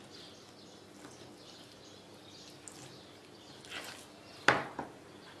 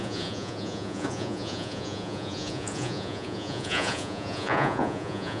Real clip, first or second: first